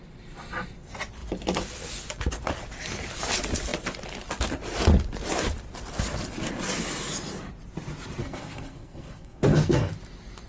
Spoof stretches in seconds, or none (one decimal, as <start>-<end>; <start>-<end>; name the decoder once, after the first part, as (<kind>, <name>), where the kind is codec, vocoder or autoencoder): 8.2-9.9 (codec, SNAC)